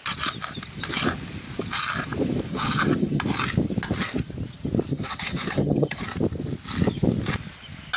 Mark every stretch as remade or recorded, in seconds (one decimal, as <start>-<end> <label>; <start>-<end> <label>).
0.0-2.5 recorded; 2.5-3.2 remade; 3.2-4.9 recorded; 4.9-6.0 remade; 6.0-8.0 recorded